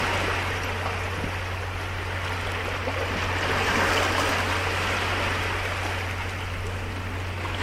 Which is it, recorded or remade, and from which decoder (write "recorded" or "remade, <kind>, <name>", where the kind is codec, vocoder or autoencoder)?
recorded